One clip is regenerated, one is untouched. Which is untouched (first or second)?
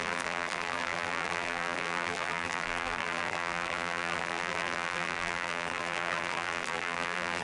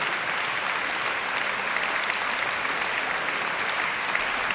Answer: second